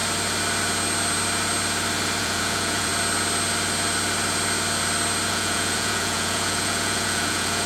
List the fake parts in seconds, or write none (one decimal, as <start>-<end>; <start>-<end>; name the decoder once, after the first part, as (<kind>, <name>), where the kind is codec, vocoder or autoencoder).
2.2-2.9 (vocoder, Vocos); 5.3-7.7